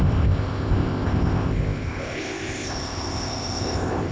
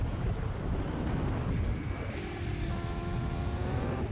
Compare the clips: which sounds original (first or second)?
second